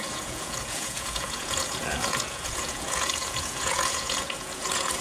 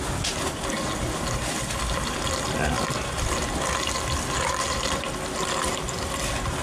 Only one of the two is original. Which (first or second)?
second